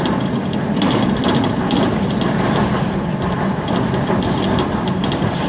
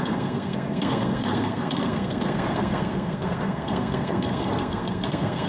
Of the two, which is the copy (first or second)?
second